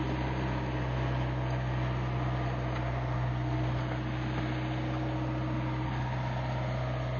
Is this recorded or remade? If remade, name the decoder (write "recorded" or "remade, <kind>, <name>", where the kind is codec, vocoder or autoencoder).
recorded